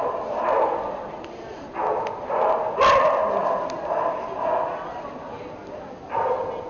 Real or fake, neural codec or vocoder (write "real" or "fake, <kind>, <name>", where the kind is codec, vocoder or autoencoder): real